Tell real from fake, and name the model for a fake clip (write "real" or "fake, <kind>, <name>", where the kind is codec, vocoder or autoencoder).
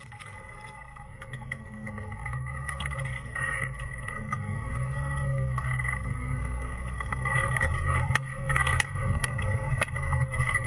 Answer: fake, codec, SNAC